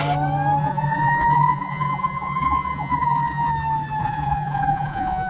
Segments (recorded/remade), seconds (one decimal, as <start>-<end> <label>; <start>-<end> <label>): 0.0-0.6 recorded; 0.6-3.5 remade; 3.5-4.0 recorded; 4.0-5.3 remade